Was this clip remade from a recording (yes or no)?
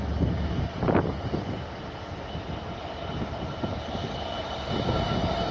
no